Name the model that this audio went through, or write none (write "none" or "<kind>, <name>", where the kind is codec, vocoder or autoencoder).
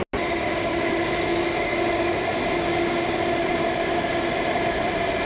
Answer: none